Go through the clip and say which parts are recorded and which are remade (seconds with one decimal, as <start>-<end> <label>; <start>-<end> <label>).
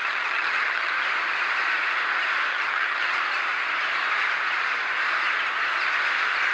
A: 0.0-0.9 remade; 0.9-2.5 recorded; 2.5-3.2 remade; 3.2-6.5 recorded